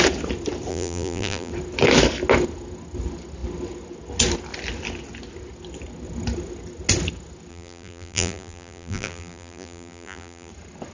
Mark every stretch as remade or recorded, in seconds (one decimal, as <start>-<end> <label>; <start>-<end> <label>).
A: 0.0-0.7 recorded; 0.7-1.5 remade; 1.5-7.5 recorded; 7.5-10.5 remade; 10.5-10.9 recorded